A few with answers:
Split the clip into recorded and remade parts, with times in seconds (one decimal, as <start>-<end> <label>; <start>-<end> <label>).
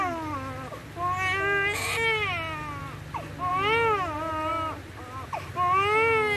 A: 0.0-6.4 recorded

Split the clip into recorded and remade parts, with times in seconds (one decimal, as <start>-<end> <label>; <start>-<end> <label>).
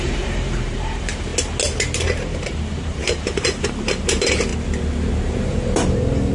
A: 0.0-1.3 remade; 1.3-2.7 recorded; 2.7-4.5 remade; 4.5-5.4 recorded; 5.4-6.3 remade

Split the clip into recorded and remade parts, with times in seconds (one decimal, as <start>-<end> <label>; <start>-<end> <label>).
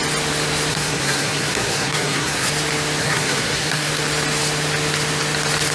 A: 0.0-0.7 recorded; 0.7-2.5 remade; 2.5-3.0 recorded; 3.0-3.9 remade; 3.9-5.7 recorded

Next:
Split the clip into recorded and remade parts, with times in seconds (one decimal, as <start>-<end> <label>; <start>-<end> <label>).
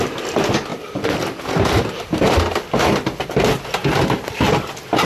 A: 0.0-0.7 recorded; 0.7-3.7 remade; 3.7-5.0 recorded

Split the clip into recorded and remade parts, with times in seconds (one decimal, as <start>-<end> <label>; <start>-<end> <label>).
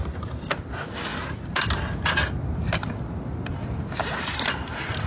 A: 0.0-5.1 recorded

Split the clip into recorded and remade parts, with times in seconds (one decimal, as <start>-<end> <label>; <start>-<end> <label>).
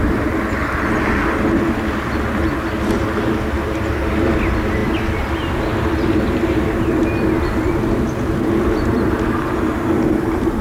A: 0.0-10.6 recorded